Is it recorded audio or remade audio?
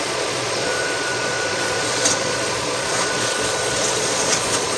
remade